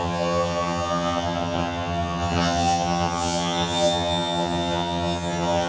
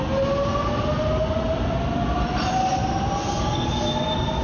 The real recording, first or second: second